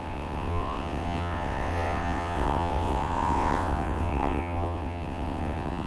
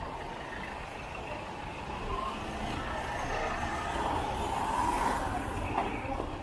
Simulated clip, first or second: first